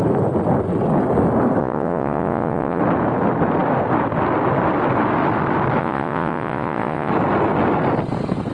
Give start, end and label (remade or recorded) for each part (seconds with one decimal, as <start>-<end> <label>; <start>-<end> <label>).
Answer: 0.0-1.6 recorded; 1.6-2.8 remade; 2.8-5.8 recorded; 5.8-7.1 remade; 7.1-8.5 recorded